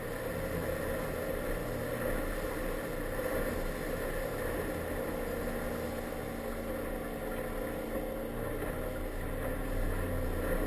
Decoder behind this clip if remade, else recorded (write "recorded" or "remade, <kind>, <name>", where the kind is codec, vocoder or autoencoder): recorded